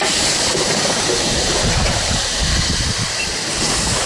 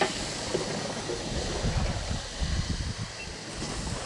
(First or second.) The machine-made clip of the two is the first